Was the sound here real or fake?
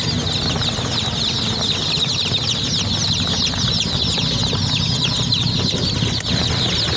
real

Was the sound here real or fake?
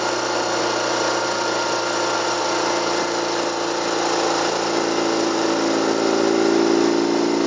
real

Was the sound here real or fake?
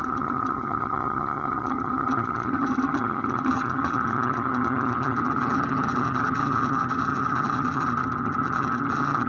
fake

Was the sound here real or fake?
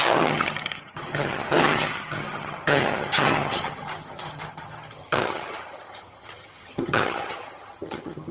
fake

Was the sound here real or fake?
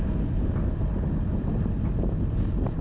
real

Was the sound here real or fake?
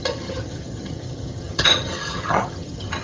fake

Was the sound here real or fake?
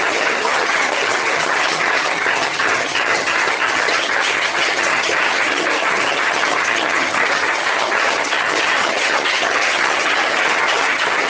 fake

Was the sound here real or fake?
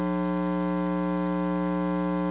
real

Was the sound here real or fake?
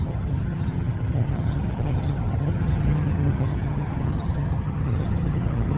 fake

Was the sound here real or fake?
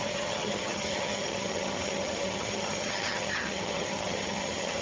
fake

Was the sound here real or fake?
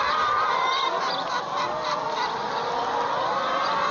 real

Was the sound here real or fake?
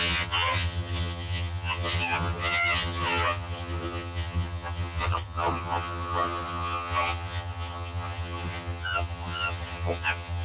fake